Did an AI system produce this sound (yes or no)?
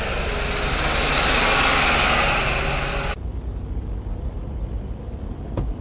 no